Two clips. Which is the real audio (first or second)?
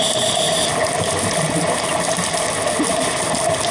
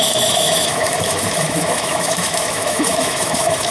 first